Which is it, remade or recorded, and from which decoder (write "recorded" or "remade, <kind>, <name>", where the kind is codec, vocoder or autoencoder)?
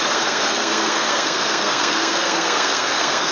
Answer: remade, codec, SNAC